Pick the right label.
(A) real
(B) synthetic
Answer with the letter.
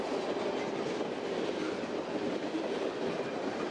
A